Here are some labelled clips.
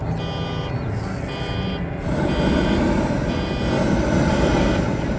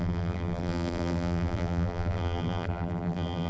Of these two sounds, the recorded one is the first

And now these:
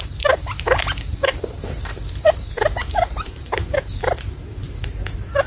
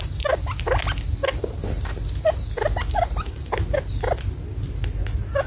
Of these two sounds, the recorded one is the second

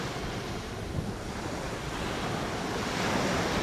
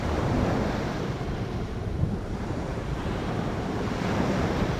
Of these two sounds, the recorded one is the first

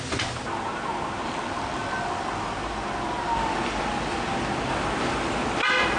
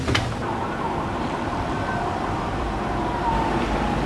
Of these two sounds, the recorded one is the first